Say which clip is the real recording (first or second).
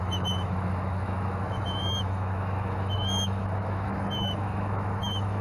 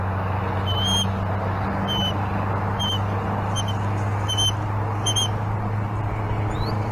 second